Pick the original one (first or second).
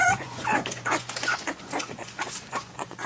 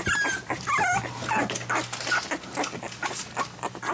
second